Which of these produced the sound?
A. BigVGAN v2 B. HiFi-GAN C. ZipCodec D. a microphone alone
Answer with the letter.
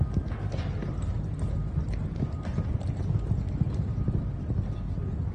D